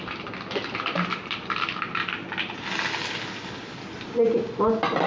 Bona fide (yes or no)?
yes